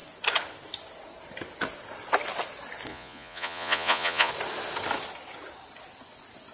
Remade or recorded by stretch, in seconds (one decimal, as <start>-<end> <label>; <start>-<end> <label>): 0.0-2.9 recorded; 2.9-4.3 remade; 4.3-6.5 recorded